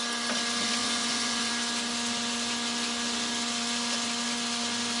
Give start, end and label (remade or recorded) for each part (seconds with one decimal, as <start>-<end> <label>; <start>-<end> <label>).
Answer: 0.0-0.8 recorded; 0.8-1.5 remade; 1.5-5.0 recorded